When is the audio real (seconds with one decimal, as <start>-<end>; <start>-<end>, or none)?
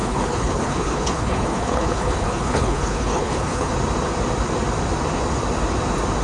3.7-6.2